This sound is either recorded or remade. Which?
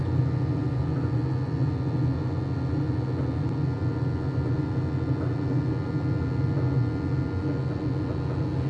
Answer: recorded